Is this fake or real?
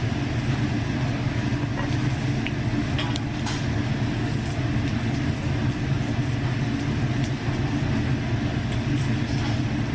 real